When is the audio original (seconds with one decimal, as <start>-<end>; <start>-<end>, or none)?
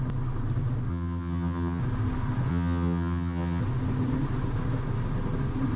0.0-0.9; 1.8-2.5; 3.6-5.8